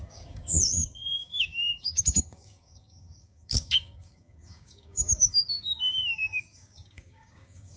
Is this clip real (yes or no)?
no